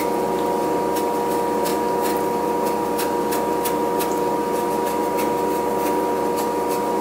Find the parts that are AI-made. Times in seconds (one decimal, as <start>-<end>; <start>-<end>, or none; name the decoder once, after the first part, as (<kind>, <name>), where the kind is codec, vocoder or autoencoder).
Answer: none